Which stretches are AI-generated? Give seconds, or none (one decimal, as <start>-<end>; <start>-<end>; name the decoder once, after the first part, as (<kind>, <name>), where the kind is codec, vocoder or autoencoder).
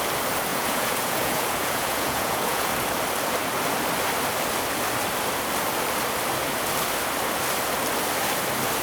0.5-2.7 (vocoder, Vocos)